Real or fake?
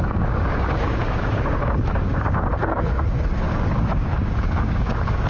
fake